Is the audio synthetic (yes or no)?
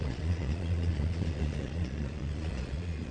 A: yes